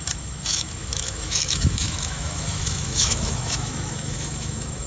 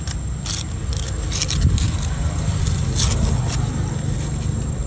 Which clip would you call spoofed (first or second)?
first